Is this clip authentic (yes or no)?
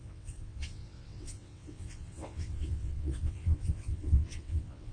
no